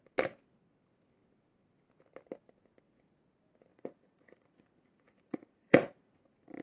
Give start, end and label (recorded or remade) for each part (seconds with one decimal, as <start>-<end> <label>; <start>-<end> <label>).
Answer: 0.0-3.7 recorded; 3.7-6.1 remade; 6.1-6.6 recorded